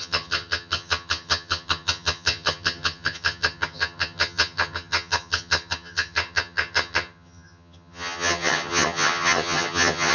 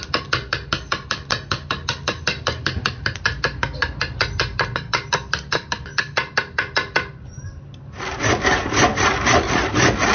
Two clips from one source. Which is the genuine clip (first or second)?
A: second